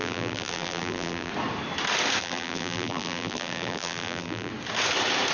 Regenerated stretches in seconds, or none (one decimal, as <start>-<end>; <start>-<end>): 0.0-1.3; 2.2-4.5